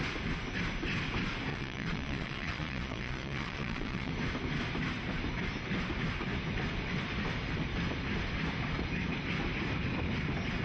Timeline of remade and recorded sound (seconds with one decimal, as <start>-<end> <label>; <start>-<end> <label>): 0.0-1.5 recorded; 1.5-4.1 remade; 4.1-10.6 recorded